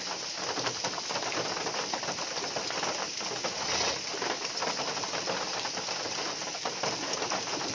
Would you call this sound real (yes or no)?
yes